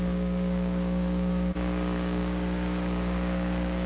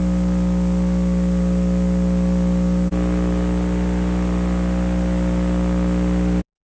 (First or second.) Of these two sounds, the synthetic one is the first